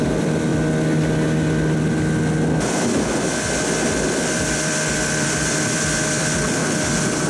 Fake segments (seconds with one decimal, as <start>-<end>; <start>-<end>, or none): 0.0-0.5; 3.6-6.6